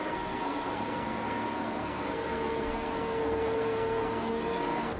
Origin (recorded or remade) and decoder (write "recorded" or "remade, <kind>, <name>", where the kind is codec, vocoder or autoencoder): remade, codec, SNAC